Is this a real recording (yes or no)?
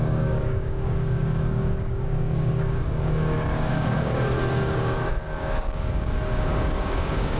no